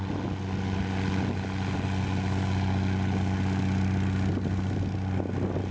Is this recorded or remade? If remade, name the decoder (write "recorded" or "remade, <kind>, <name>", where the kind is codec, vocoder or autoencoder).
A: recorded